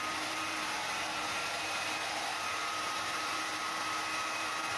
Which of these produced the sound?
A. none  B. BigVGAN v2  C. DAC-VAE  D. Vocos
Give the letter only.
B